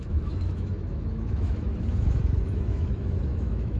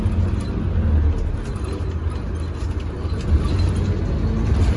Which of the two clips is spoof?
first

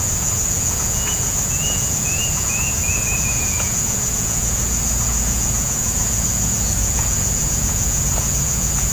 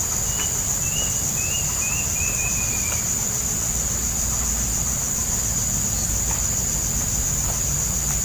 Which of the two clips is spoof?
first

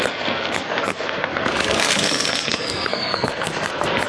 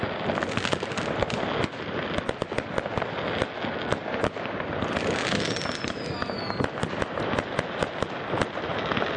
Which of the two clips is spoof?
first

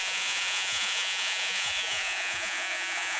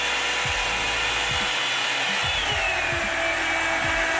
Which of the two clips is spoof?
first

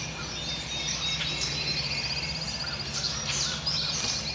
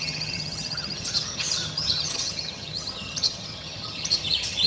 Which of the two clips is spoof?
second